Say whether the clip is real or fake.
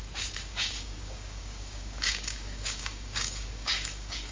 fake